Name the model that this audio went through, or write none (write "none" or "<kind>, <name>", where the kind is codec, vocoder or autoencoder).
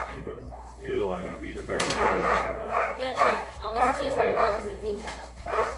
codec, SNAC